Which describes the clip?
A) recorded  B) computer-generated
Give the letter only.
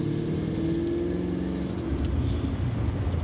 A